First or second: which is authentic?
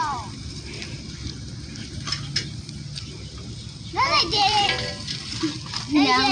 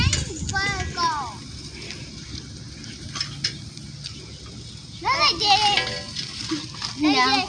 second